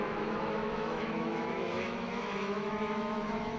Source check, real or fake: fake